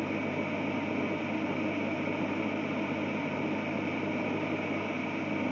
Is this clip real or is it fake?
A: real